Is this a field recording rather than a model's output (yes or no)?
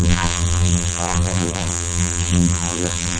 no